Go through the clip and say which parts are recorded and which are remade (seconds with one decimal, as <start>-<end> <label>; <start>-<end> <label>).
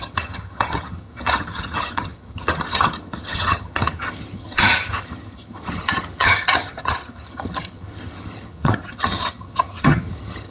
0.0-10.5 remade